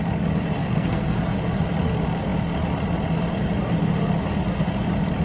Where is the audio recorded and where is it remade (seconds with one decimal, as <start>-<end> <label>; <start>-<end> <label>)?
0.0-0.6 recorded; 0.6-1.2 remade; 1.2-5.2 recorded